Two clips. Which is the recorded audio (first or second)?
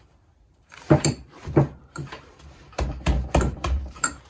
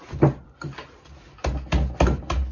second